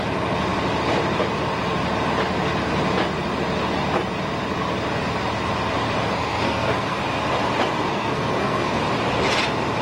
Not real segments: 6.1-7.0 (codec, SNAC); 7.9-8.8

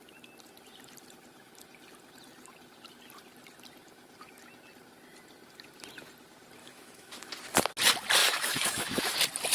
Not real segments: 6.6-7.2 (autoencoder, DAC-VAE); 8.2-9.0

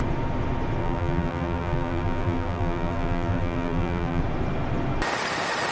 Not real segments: 0.8-4.2 (vocoder, BigVGAN v2)

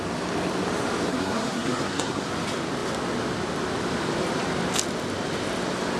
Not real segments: 1.1-2.3 (codec, SNAC)